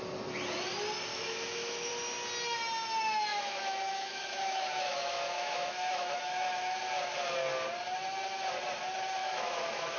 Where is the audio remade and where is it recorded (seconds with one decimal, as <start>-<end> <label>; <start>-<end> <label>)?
0.0-1.1 recorded; 1.1-1.9 remade; 1.9-3.3 recorded; 3.3-6.8 remade; 6.8-9.2 recorded; 9.2-10.0 remade

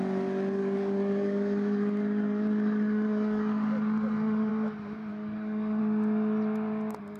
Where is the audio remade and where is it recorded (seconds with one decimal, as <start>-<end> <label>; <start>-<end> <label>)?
0.0-0.6 recorded; 0.6-4.5 remade; 4.5-5.1 recorded; 5.1-5.8 remade; 5.8-7.2 recorded

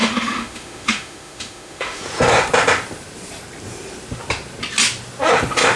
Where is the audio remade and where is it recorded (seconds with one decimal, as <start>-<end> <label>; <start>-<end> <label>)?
0.0-2.0 remade; 2.0-5.8 recorded

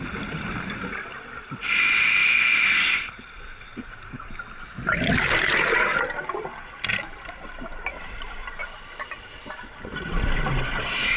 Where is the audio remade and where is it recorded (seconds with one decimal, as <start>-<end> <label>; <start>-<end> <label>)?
0.0-1.1 recorded; 1.1-1.6 remade; 1.6-2.2 recorded; 2.2-6.7 remade; 6.7-8.6 recorded; 8.6-11.2 remade

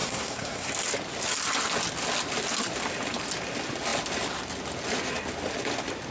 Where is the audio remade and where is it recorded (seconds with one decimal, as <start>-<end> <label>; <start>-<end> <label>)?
0.0-0.7 remade; 0.7-6.1 recorded

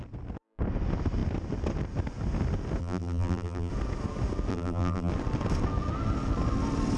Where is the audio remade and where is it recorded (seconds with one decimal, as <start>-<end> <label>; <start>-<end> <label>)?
0.0-2.8 recorded; 2.8-3.7 remade; 3.7-4.5 recorded; 4.5-5.1 remade; 5.1-7.0 recorded

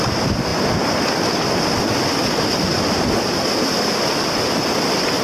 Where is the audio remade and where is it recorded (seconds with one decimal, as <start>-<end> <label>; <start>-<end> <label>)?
0.0-5.2 recorded

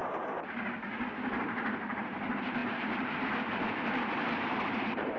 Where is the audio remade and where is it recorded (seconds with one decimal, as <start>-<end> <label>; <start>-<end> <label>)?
0.0-1.9 recorded; 1.9-5.2 remade